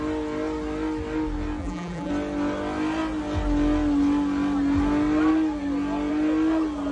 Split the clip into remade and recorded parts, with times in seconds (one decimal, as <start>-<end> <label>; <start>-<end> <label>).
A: 0.0-1.6 recorded; 1.6-2.1 remade; 2.1-6.9 recorded